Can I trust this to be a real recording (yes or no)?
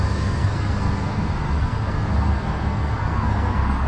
no